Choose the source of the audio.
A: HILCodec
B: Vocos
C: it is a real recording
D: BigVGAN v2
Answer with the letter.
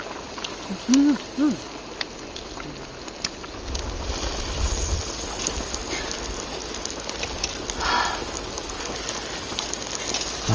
C